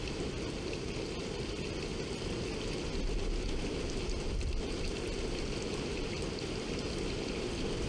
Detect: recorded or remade recorded